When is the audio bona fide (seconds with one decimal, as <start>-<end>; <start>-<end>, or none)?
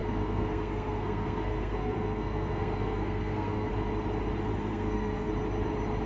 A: 3.7-4.5; 5.3-6.1